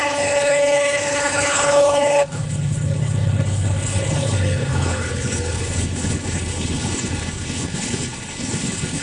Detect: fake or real fake